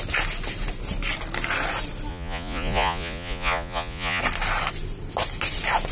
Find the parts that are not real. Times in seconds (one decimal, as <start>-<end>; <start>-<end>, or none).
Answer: 2.1-4.2